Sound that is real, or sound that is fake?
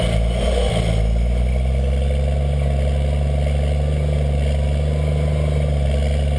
real